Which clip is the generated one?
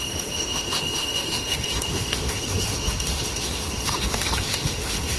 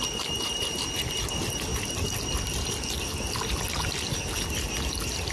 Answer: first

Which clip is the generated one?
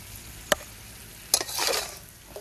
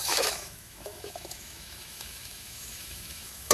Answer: second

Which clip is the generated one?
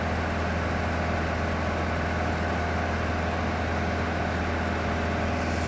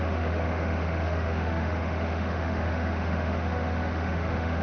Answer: second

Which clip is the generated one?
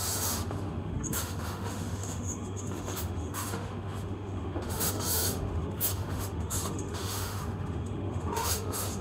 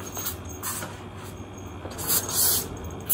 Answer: first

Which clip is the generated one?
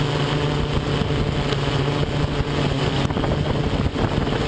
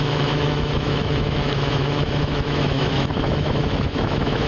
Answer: second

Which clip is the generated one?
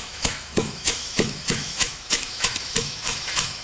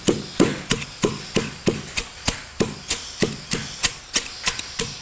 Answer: first